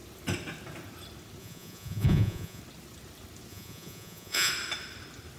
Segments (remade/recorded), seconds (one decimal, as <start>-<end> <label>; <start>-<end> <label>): 0.0-1.4 recorded; 1.4-2.6 remade; 2.6-3.5 recorded; 3.5-4.5 remade; 4.5-5.4 recorded